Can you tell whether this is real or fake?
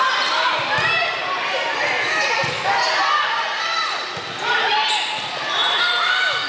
real